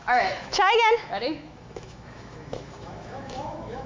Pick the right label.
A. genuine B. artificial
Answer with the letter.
B